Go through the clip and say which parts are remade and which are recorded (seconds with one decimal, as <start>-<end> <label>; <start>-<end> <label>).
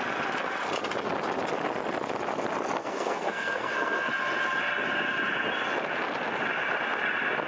0.0-2.8 recorded; 2.8-4.1 remade; 4.1-7.5 recorded